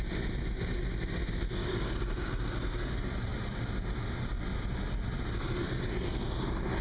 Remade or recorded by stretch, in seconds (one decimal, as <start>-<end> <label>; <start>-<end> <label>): 0.0-1.6 recorded; 1.6-2.1 remade; 2.1-6.8 recorded